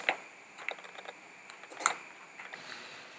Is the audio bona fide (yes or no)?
yes